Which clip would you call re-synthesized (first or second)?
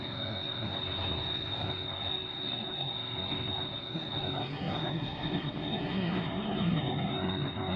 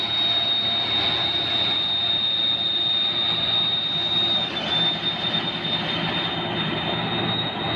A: first